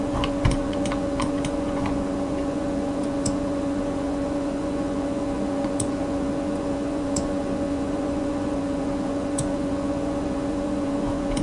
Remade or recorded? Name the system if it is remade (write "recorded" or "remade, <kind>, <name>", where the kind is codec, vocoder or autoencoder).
remade, vocoder, Vocos